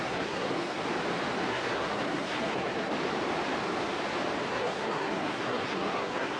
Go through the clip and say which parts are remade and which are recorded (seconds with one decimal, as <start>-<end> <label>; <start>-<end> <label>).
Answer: 0.0-0.8 remade; 0.8-1.5 recorded; 1.5-2.9 remade; 2.9-4.5 recorded; 4.5-6.4 remade